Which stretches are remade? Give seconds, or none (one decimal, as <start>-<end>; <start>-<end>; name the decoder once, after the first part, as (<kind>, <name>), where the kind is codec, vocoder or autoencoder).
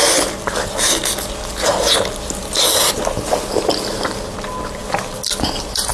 none